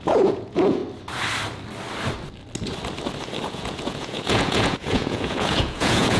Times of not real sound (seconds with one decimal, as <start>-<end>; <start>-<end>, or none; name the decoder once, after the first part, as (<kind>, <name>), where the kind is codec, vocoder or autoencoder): 0.0-0.8 (vocoder, Vocos); 3.5-6.2